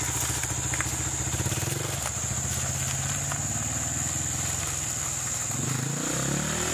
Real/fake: real